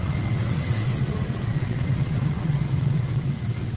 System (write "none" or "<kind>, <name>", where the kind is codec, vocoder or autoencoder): vocoder, WaveNeXt